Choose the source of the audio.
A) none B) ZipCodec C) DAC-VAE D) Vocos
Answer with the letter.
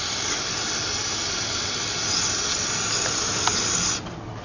A